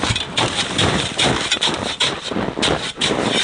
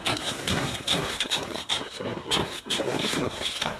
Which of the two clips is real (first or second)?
first